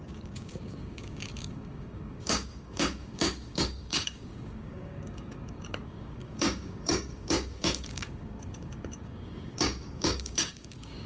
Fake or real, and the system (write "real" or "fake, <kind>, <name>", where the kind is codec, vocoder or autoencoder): fake, codec, DAC